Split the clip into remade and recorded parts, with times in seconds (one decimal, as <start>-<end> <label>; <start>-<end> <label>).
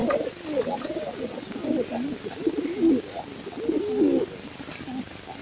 0.0-5.4 recorded